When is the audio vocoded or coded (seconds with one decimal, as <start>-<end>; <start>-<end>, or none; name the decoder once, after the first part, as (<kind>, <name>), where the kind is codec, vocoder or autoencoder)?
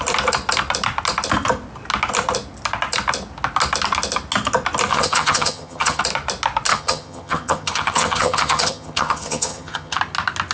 4.9-6.0 (vocoder, HiFi-GAN); 6.7-10.0